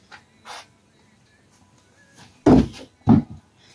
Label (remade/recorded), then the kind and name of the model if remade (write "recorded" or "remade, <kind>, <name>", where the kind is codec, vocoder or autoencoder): recorded